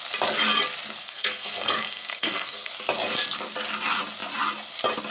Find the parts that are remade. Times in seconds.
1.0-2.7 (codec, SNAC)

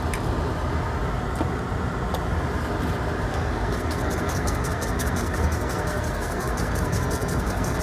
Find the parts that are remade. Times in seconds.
3.3-7.8 (codec, SNAC)

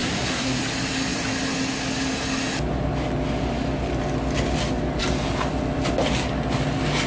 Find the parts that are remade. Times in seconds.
0.0-0.6 (codec, SNAC)

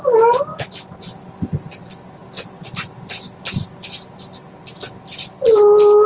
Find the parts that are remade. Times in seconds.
none

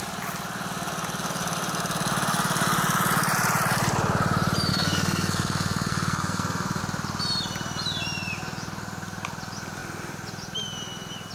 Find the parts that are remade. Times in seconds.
4.7-6.8 (codec, SNAC)

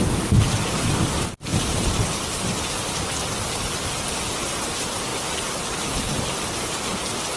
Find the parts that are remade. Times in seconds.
none

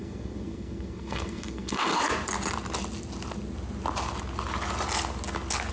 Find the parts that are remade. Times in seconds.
0.0-2.0 (codec, SNAC)